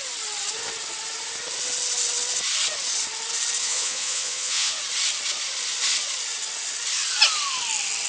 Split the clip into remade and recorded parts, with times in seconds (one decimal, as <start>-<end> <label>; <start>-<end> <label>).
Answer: 0.0-3.6 recorded; 3.6-4.8 remade; 4.8-8.1 recorded